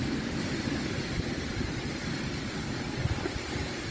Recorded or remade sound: recorded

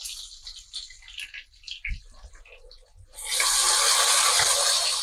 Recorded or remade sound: recorded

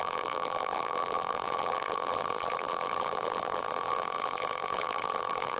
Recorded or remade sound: remade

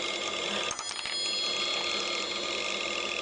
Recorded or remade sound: recorded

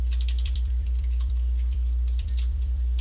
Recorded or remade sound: remade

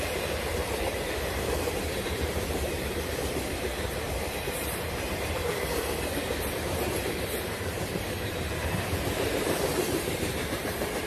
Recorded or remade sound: remade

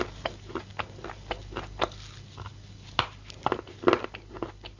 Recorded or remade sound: recorded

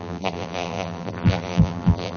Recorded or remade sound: remade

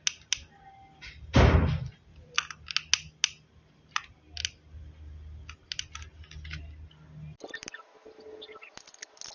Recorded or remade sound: recorded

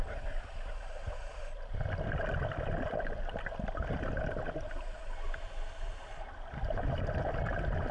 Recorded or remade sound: recorded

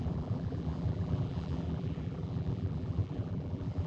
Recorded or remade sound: remade